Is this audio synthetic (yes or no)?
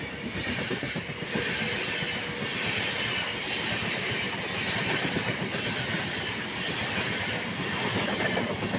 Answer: no